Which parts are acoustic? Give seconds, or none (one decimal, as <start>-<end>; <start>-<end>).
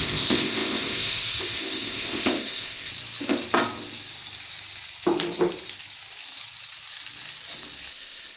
2.9-7.9